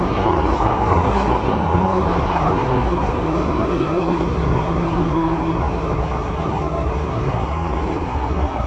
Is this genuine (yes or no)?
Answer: no